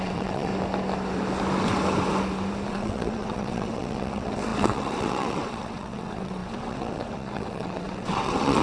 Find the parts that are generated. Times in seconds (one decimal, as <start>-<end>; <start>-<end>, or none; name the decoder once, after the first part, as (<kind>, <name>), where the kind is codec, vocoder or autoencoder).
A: 0.0-0.5 (vocoder, WaveNeXt); 2.7-8.6

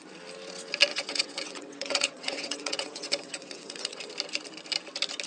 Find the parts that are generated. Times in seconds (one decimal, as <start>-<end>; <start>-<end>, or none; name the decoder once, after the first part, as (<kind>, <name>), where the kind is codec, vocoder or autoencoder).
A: 0.9-4.1 (vocoder, WaveNeXt)

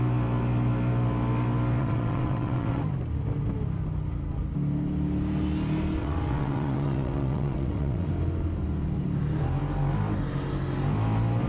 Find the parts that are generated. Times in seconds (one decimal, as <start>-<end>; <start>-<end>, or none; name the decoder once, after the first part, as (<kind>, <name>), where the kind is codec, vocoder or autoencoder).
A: 1.8-2.8 (vocoder, WaveNeXt); 6.0-8.1